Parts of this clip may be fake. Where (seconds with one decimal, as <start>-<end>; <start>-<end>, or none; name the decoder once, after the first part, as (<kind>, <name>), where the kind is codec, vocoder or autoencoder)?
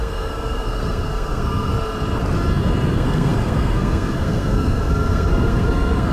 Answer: 0.0-1.7 (codec, SNAC); 2.9-6.1